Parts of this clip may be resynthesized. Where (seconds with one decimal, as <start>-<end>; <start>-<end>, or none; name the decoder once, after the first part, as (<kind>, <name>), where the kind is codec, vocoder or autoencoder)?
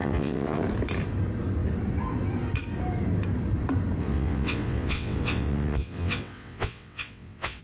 0.0-0.6 (vocoder, WaveNeXt); 4.0-7.6